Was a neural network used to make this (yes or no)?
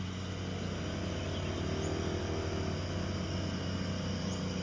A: no